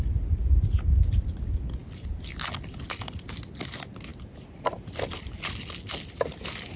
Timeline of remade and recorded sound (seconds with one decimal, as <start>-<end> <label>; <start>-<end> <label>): 0.0-6.8 recorded